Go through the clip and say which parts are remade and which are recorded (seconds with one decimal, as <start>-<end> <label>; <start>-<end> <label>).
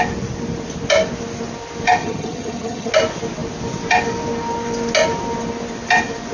0.0-2.0 recorded; 2.0-2.9 remade; 2.9-6.3 recorded